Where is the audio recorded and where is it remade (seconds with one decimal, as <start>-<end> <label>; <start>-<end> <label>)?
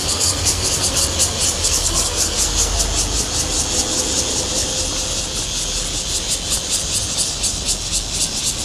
0.0-1.0 remade; 1.0-1.6 recorded; 1.6-2.8 remade; 2.8-8.6 recorded